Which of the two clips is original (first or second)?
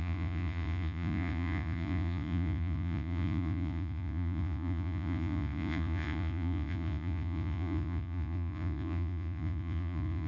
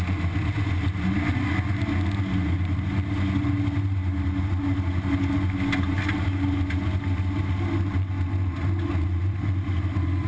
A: second